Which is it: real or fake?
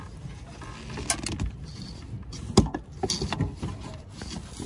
real